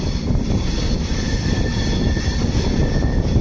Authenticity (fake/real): real